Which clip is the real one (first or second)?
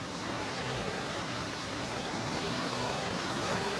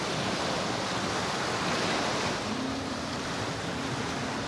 second